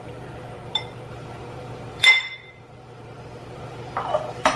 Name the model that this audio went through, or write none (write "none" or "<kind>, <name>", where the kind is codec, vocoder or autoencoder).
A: vocoder, BigVGAN v2